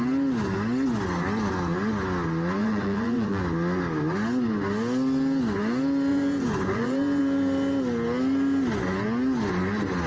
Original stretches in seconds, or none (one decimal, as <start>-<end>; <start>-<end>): 0.0-2.6; 3.4-6.1; 7.2-10.1